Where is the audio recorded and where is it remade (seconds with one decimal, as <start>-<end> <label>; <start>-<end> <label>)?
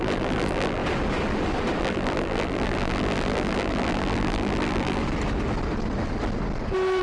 0.0-0.8 remade; 0.8-1.8 recorded; 1.8-5.0 remade; 5.0-7.0 recorded